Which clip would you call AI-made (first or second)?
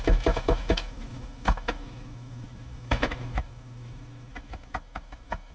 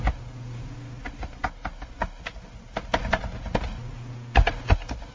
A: first